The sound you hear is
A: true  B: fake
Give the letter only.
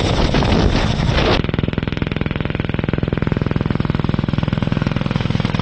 A